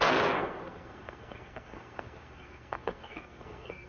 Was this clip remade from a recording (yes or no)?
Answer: yes